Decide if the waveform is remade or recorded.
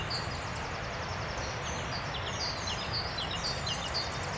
recorded